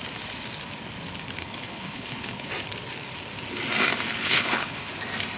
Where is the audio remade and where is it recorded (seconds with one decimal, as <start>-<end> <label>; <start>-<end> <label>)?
0.0-1.4 recorded; 1.4-2.5 remade; 2.5-4.2 recorded; 4.2-4.9 remade; 4.9-5.4 recorded